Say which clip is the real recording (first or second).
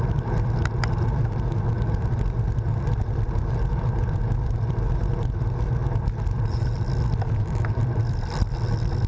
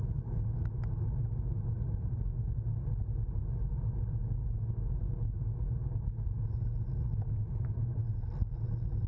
second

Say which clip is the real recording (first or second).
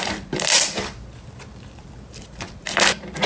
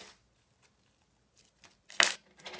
second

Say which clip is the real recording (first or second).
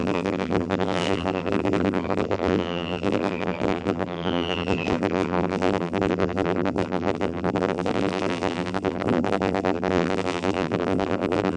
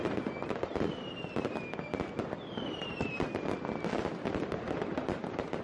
second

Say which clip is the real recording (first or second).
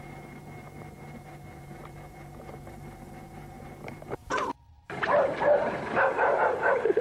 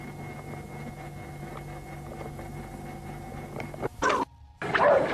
second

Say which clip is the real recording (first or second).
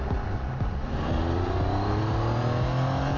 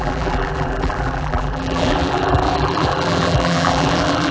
first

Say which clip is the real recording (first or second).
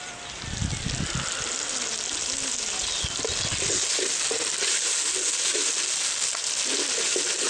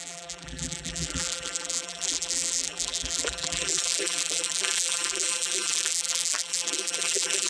first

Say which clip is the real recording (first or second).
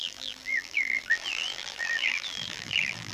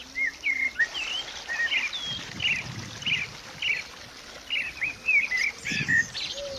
second